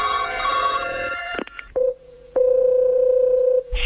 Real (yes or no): no